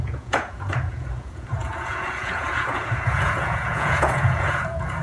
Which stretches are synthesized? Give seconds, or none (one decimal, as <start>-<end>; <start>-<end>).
0.0-5.0